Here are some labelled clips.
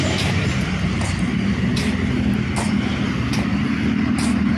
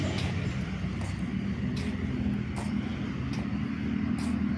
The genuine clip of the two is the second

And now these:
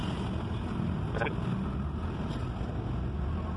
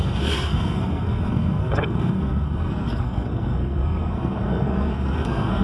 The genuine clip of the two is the first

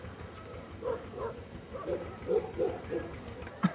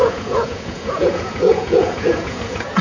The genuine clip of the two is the first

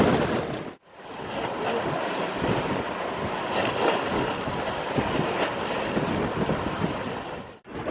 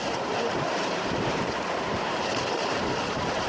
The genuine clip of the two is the first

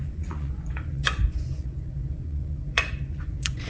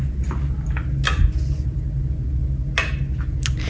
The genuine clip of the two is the second